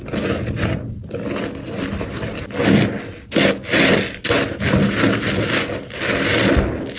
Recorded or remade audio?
recorded